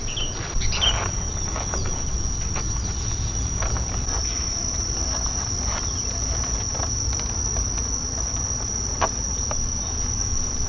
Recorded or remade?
recorded